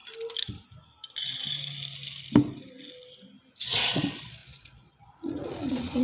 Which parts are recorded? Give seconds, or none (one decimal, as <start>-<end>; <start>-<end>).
0.0-3.6